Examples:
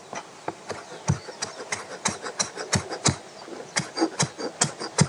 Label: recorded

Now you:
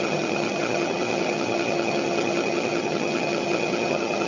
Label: remade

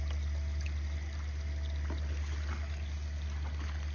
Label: recorded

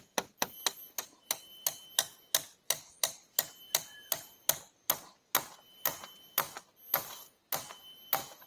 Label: recorded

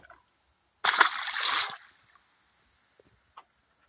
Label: recorded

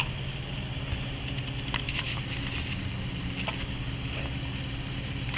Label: remade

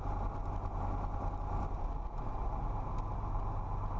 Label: recorded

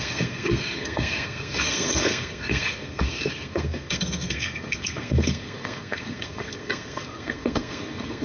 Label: remade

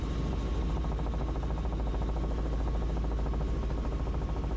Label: recorded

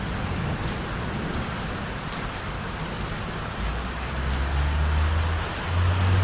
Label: recorded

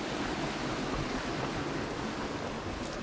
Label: recorded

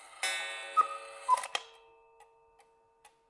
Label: recorded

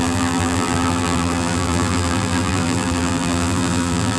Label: remade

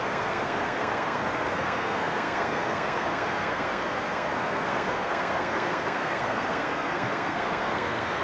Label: remade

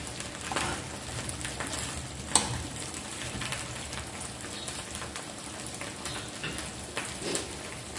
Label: recorded